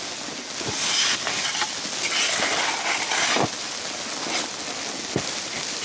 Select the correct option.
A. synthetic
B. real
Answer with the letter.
B